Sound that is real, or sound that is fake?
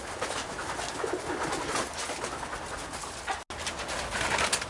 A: real